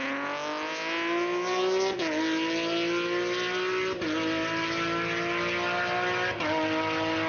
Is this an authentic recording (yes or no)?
yes